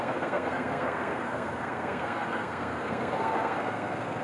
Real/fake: fake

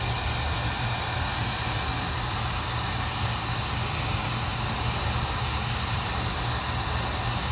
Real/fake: real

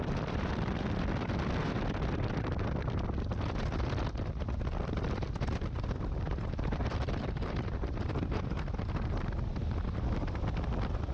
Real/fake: fake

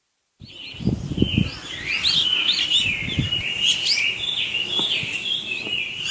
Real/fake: real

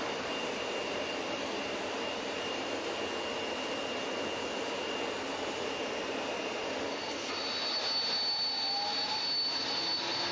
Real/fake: real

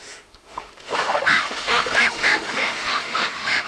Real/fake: fake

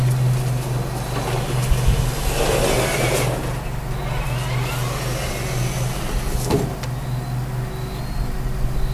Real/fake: real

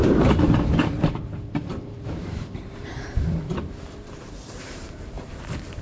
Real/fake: fake